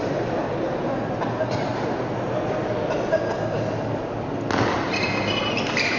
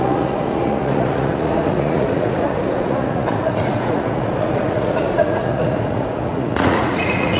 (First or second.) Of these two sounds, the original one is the first